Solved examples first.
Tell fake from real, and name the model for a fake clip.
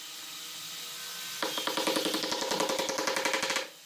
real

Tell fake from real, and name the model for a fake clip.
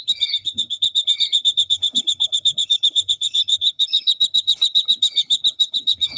fake, codec, HILCodec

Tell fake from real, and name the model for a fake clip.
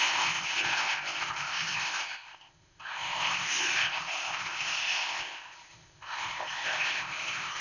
fake, codec, ZipCodec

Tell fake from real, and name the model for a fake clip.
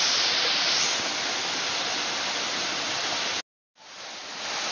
real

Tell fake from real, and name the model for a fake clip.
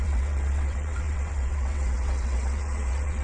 fake, vocoder, WaveNeXt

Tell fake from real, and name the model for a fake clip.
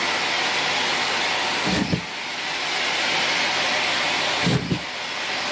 real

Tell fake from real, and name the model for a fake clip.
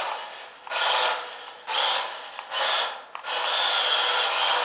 real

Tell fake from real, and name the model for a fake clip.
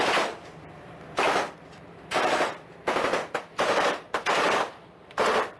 fake, vocoder, BigVGAN v2